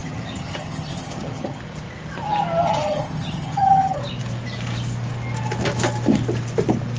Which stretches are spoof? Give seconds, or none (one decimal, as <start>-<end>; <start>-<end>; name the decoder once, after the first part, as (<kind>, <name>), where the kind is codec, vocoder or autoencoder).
0.0-1.6 (vocoder, HiFi-GAN); 2.6-4.0